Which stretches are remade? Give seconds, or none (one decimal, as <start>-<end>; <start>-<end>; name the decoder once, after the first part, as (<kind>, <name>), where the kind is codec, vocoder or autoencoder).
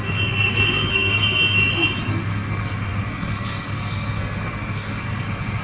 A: 0.0-1.6 (codec, SNAC); 2.1-5.6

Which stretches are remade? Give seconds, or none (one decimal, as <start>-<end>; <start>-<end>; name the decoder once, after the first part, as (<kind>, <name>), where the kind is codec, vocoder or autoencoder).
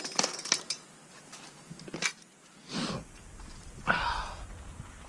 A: none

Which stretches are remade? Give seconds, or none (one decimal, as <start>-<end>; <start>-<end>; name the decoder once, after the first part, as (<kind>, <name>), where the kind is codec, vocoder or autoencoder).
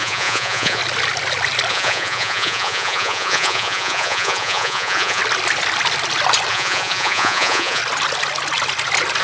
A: 0.0-0.8 (vocoder, Vocos); 1.7-5.2; 6.5-7.8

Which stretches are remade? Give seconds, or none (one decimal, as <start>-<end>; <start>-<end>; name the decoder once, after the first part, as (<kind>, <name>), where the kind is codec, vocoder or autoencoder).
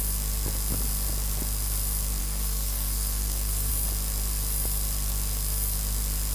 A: 2.2-3.7 (codec, SNAC)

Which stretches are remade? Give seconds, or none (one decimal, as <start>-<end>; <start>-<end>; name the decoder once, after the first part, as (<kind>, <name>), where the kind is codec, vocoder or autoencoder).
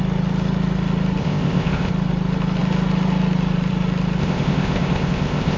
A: 1.2-1.9 (codec, ZipCodec); 4.2-5.6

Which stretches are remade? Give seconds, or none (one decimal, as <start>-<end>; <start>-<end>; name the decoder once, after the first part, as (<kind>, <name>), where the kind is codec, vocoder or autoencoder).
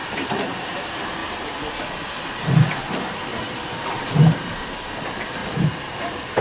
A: 0.0-0.7 (vocoder, BigVGAN v2); 3.3-4.6; 5.4-6.4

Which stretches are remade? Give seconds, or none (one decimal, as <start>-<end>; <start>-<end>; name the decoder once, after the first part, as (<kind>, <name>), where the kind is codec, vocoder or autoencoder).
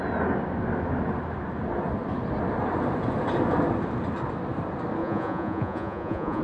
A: 5.0-6.4 (vocoder, Vocos)